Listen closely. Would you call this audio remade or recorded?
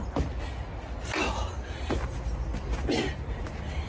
recorded